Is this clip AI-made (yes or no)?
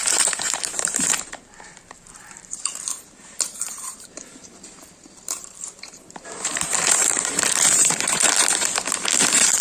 yes